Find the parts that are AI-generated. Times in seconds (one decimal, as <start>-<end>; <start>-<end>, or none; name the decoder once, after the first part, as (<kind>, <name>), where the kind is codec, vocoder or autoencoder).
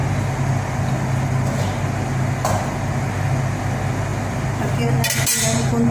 none